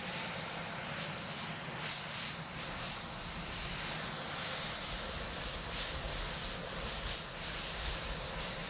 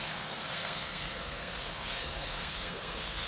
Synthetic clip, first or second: second